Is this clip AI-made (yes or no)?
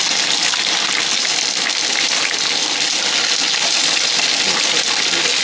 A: no